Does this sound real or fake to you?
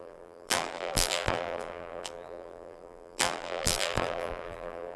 fake